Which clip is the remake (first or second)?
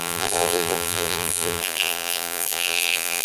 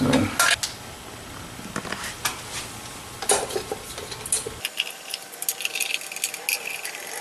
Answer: first